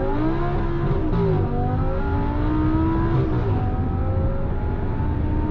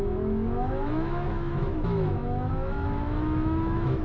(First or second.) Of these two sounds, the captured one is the first